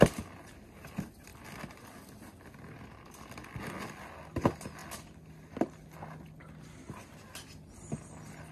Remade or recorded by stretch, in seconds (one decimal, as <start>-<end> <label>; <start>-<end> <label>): 0.0-8.5 recorded